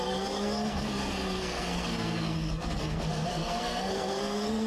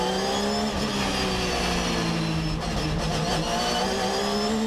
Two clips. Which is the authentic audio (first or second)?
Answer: second